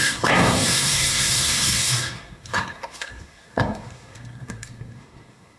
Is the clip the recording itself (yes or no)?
no